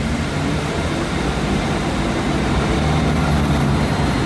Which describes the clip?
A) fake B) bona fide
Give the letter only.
B